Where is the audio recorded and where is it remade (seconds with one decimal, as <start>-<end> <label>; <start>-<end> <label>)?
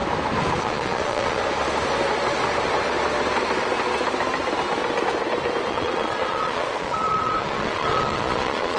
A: 0.0-0.6 recorded; 0.6-1.4 remade; 1.4-5.7 recorded; 5.7-8.8 remade